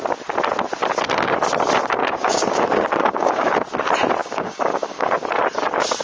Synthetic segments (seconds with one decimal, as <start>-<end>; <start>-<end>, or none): 2.0-2.6; 3.0-3.5; 4.2-5.1